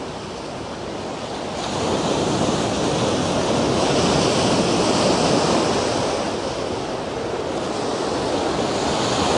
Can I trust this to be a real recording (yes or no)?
yes